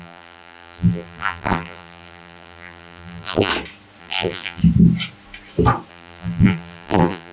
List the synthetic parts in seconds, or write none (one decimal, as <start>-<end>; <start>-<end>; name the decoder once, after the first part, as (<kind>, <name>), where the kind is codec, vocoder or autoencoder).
0.0-3.5 (vocoder, BigVGAN v2); 4.0-4.6; 5.9-7.3